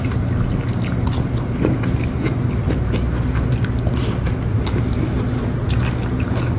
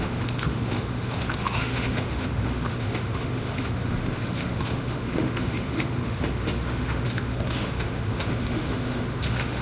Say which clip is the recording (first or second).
first